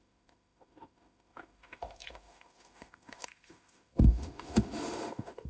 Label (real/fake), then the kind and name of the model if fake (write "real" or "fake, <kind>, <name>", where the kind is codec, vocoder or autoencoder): fake, autoencoder, DAC-VAE